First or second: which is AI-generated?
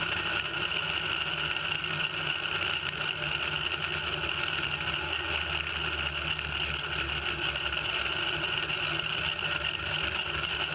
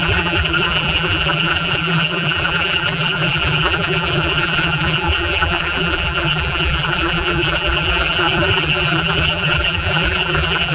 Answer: second